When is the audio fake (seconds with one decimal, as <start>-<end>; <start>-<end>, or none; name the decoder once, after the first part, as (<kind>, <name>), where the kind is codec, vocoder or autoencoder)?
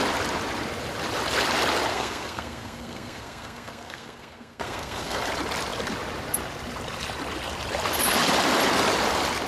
1.9-5.2 (codec, SNAC)